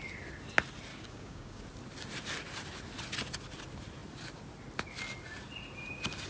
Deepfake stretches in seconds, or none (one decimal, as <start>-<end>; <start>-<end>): 0.9-1.6